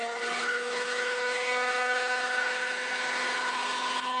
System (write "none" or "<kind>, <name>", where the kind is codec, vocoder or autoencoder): codec, HILCodec